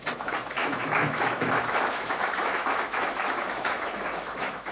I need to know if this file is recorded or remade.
remade